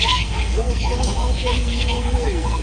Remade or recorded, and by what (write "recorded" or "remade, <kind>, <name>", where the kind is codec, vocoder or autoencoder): remade, codec, SNAC